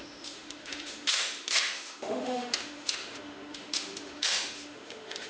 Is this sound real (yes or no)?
no